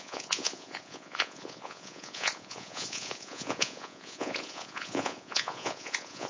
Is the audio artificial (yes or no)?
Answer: yes